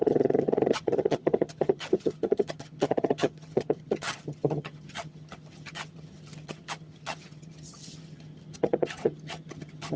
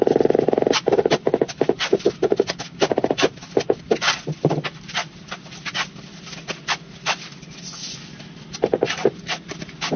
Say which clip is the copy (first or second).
first